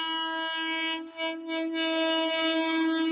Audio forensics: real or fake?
real